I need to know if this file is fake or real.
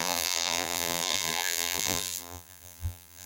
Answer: fake